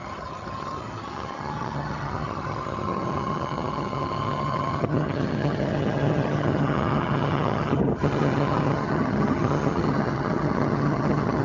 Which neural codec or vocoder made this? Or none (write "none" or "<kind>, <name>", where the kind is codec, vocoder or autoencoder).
vocoder, HiFi-GAN